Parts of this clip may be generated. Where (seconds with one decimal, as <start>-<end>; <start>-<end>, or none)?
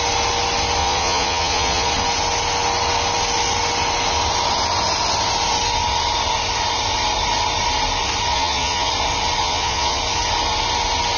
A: 0.8-1.9; 8.3-8.9; 9.4-10.0